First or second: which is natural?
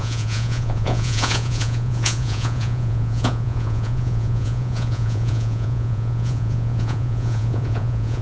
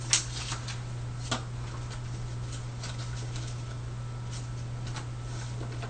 second